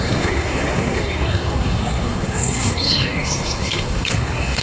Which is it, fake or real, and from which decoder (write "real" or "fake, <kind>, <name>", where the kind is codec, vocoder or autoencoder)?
fake, codec, SNAC